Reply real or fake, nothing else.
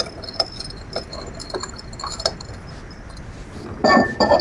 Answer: real